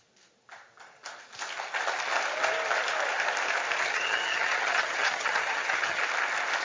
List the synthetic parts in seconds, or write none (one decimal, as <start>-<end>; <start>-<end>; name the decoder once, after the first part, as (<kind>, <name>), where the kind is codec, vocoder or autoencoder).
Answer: 3.8-6.0 (vocoder, HiFi-GAN)